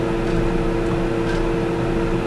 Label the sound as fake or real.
real